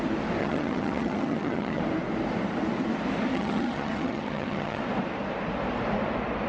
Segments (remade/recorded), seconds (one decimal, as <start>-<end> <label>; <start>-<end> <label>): 0.0-0.4 recorded; 0.4-1.8 remade; 1.8-3.3 recorded; 3.3-4.8 remade; 4.8-6.5 recorded